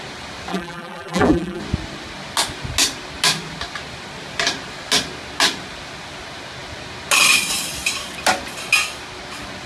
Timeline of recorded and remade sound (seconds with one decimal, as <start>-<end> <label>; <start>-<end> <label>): 0.0-0.5 recorded; 0.5-1.6 remade; 1.6-9.7 recorded